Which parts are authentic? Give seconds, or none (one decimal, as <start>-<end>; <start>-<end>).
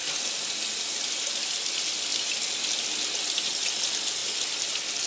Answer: 0.0-5.1